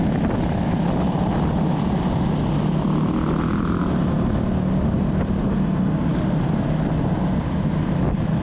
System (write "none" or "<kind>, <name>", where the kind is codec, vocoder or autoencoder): none